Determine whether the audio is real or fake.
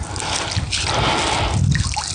real